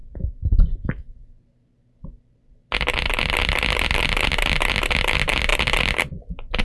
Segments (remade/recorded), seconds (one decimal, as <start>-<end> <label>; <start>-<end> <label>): 0.0-6.6 recorded